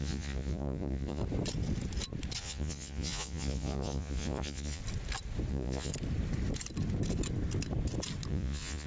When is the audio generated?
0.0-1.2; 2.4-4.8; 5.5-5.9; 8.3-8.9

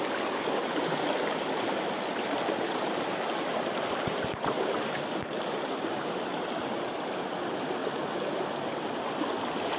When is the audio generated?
none